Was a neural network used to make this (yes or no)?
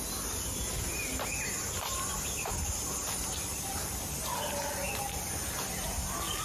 no